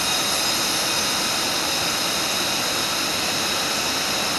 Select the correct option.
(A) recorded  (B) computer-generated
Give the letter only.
A